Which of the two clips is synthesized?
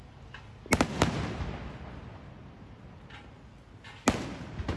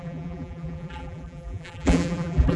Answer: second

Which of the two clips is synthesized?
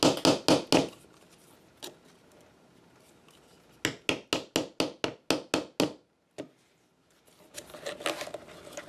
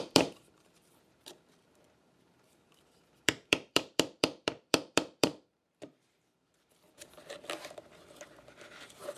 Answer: second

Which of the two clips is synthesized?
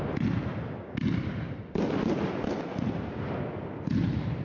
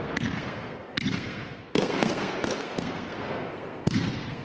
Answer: second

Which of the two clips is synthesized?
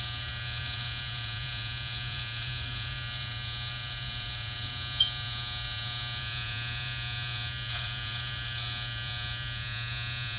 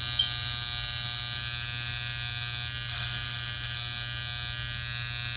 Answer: first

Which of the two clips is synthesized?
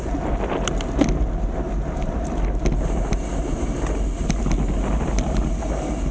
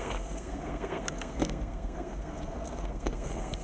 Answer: second